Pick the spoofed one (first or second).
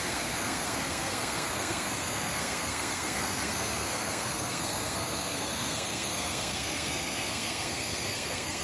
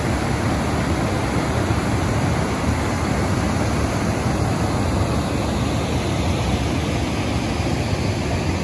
first